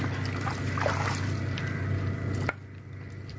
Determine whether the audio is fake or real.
real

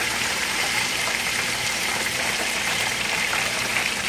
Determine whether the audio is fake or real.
fake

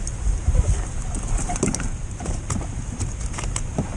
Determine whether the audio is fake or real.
fake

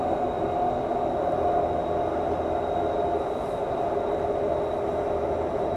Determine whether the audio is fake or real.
real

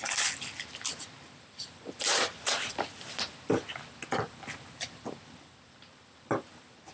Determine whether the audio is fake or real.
real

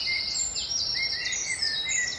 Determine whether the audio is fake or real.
fake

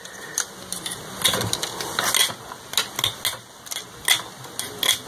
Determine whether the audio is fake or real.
real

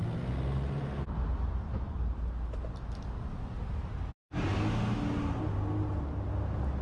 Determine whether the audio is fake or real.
real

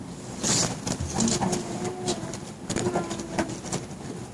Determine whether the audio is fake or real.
fake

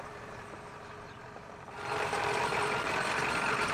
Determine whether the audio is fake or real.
fake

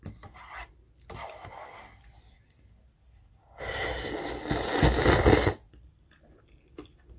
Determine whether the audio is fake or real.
real